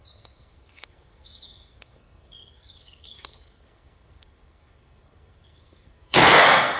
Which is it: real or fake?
fake